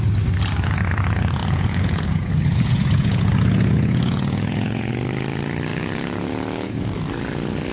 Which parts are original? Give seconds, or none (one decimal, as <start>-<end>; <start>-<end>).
0.0-1.4; 4.9-5.7; 6.8-7.7